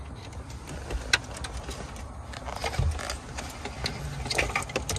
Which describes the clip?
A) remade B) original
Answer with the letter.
B